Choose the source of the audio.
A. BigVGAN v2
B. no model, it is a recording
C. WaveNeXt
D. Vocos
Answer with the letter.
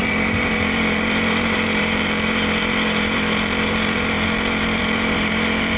A